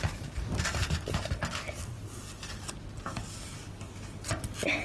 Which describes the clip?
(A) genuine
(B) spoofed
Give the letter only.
A